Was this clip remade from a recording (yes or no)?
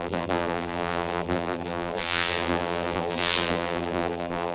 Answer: yes